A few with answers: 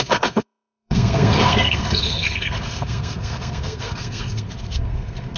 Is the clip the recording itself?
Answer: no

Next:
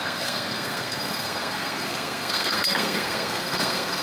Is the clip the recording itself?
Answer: no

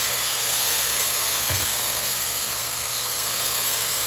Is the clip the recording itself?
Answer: no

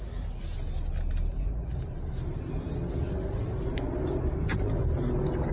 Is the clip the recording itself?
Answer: yes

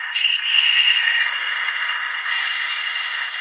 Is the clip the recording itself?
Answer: no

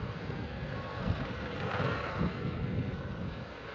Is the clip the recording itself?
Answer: no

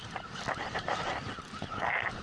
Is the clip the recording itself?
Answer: yes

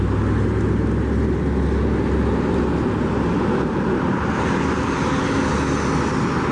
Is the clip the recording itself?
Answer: yes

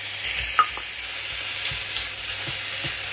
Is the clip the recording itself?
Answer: yes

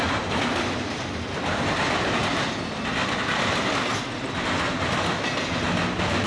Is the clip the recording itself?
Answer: yes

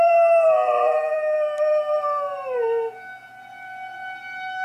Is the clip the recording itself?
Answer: yes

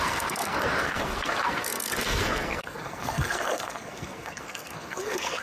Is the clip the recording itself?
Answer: no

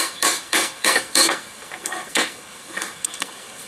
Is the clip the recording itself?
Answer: no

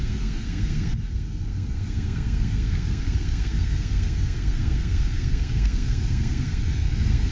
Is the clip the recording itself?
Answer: no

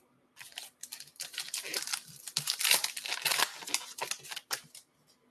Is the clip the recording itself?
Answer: yes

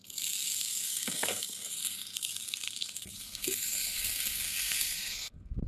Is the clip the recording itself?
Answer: no